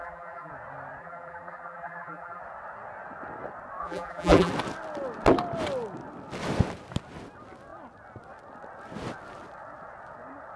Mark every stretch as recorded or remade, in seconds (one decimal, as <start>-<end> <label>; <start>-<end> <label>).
0.0-0.5 remade; 0.5-1.0 recorded; 1.0-2.4 remade; 2.4-3.8 recorded; 3.8-4.5 remade; 4.5-10.6 recorded